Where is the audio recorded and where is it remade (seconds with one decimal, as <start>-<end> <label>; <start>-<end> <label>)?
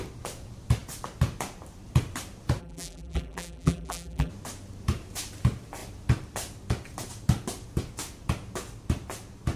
0.0-2.6 recorded; 2.6-4.3 remade; 4.3-9.6 recorded